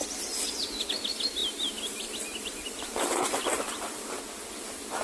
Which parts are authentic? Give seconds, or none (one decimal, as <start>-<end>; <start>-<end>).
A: 0.0-1.4; 4.2-5.0